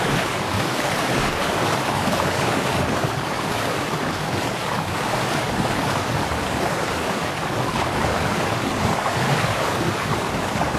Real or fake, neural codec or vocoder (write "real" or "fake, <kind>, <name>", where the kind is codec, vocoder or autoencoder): fake, codec, DAC